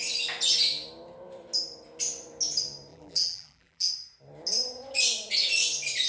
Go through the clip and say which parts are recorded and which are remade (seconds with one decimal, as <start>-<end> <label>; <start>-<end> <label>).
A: 0.0-2.9 recorded; 2.9-3.9 remade; 3.9-6.1 recorded